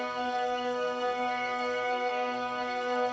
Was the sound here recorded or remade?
remade